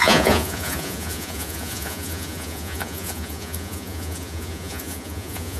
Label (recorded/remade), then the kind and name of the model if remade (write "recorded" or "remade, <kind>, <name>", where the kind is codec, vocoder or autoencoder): remade, vocoder, Vocos